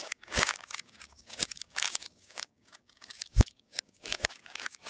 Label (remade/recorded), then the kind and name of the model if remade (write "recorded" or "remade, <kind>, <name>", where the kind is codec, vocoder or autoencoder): remade, codec, DAC